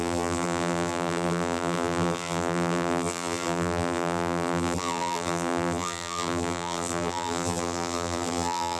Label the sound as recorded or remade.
remade